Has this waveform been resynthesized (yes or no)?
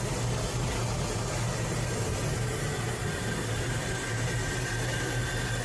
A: no